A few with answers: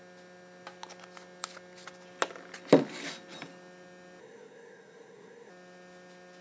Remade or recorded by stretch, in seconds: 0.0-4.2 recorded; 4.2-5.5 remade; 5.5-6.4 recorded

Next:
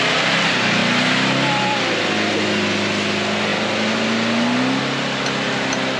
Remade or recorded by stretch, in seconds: 0.0-6.0 recorded

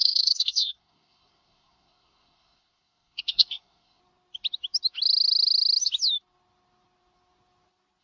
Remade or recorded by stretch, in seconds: 0.0-4.0 remade; 4.0-8.0 recorded

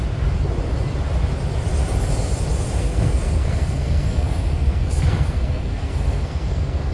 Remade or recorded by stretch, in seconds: 0.0-2.8 recorded; 2.8-6.9 remade

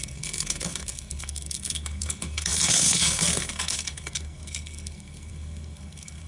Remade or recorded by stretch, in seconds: 0.0-6.3 remade

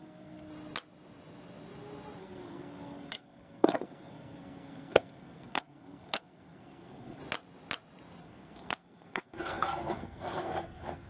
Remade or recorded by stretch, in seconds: 0.0-0.5 remade; 0.5-2.2 recorded; 2.2-7.2 remade; 7.2-8.2 recorded; 8.2-11.1 remade